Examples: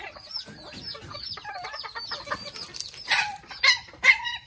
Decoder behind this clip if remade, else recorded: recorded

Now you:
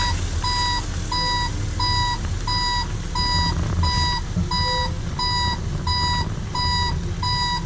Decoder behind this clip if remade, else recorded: recorded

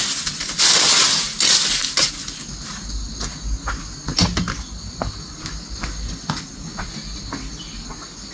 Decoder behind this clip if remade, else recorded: recorded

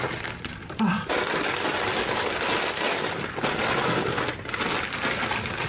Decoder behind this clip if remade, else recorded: recorded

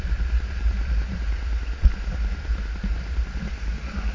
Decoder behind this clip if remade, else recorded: recorded